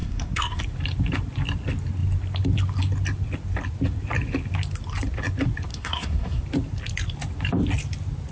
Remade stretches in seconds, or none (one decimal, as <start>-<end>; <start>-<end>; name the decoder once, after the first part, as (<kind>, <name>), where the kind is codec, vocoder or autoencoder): 0.0-0.6 (codec, SNAC); 5.7-6.4